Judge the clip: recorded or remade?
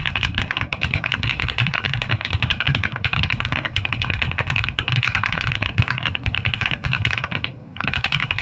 remade